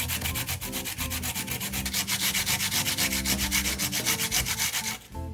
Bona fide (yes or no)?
yes